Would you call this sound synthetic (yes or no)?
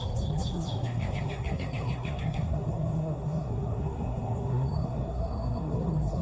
yes